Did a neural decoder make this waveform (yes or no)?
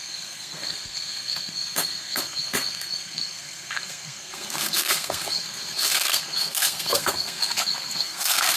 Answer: yes